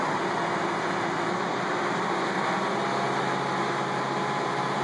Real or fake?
real